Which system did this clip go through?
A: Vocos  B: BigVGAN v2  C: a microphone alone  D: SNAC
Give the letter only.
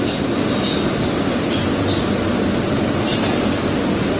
C